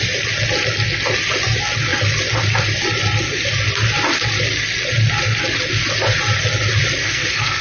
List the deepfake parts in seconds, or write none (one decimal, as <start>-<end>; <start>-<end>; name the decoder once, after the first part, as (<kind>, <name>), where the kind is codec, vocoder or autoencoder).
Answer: 7.0-7.6 (codec, SNAC)